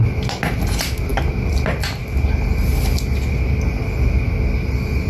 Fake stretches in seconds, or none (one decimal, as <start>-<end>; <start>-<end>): none